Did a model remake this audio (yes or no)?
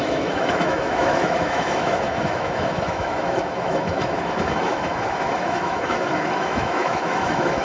yes